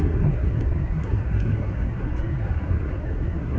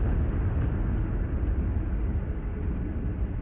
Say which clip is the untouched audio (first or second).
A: second